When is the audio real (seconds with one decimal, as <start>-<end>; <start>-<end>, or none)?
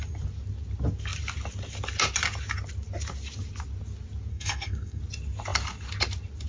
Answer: 0.0-4.3; 5.0-6.5